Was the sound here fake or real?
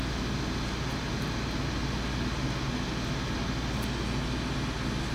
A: real